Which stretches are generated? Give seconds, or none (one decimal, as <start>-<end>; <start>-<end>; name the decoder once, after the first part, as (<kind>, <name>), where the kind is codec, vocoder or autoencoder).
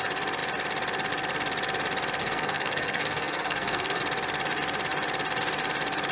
2.2-4.0 (codec, SNAC)